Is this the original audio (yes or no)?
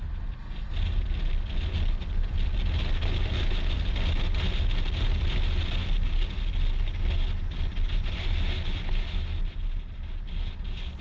yes